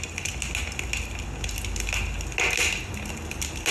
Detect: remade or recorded recorded